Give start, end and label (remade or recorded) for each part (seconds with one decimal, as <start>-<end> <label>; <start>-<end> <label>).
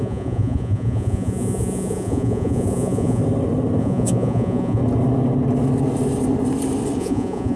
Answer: 0.0-3.2 remade; 3.2-3.8 recorded; 3.8-4.8 remade; 4.8-7.0 recorded; 7.0-7.6 remade